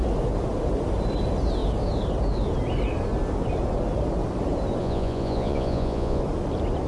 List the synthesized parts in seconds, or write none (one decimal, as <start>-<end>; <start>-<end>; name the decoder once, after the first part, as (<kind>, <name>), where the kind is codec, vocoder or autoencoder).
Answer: 4.8-6.2 (vocoder, Vocos)